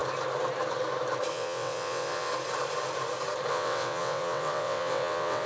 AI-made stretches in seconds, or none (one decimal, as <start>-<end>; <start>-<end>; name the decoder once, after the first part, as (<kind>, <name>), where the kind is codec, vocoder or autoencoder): 1.3-2.3 (vocoder, WaveNeXt); 3.5-5.5